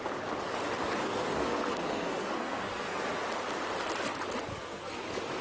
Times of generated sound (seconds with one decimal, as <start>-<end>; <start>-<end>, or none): 1.0-3.1; 4.5-5.0